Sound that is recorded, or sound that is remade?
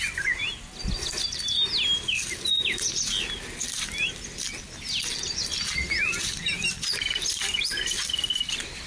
recorded